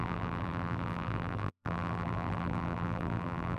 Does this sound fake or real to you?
fake